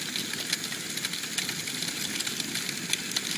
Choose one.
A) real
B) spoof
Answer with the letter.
A